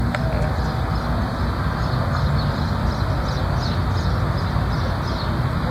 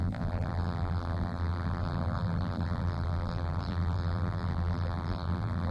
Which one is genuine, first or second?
first